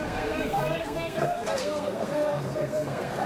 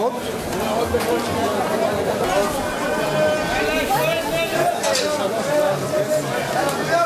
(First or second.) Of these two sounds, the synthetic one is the first